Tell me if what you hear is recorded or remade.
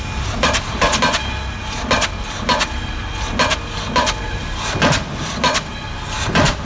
recorded